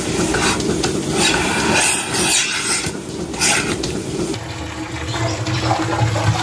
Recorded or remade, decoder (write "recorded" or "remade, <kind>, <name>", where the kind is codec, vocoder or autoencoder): recorded